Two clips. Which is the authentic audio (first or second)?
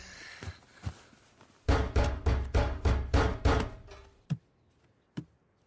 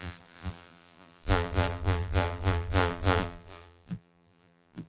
first